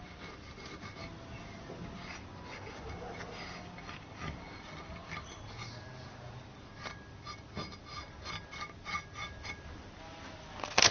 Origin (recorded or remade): recorded